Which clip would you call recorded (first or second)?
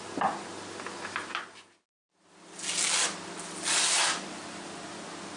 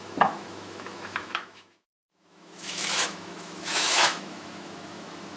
first